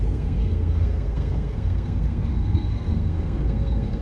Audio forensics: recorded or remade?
remade